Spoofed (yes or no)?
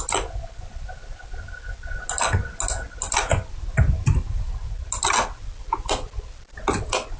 no